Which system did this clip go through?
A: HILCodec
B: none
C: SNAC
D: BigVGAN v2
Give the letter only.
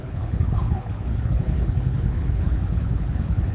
A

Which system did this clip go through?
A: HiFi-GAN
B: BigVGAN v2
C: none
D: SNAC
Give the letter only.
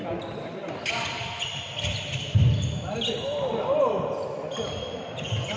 C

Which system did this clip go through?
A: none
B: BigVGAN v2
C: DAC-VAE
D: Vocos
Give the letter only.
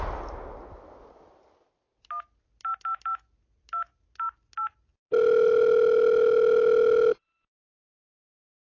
A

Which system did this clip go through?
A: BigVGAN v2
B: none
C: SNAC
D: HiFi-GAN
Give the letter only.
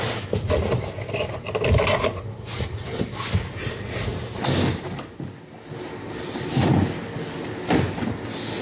B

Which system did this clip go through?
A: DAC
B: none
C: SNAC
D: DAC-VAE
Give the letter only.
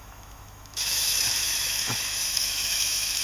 D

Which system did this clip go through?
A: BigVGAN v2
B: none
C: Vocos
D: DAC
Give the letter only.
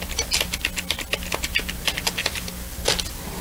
B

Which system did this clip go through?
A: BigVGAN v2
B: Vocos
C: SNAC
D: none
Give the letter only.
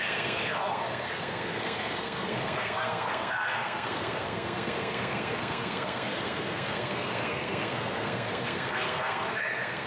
C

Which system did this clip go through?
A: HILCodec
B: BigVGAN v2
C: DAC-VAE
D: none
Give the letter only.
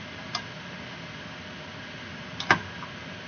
D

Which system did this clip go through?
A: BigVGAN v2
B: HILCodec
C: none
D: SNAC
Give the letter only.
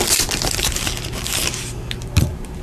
A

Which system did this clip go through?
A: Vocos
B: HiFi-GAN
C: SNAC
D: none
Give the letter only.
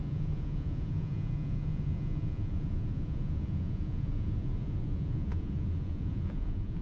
A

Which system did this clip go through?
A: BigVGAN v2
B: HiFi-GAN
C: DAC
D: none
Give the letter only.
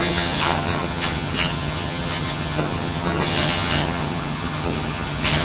B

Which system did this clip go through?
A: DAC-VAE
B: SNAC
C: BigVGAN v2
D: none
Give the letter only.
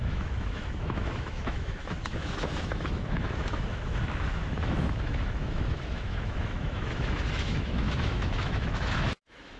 A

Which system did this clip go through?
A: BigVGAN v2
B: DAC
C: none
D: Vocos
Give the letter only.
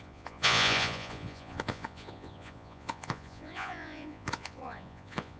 D